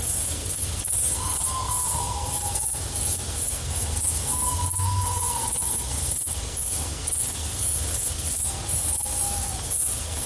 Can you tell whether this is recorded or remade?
remade